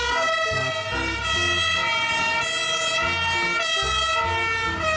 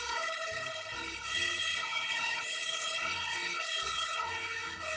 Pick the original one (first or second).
first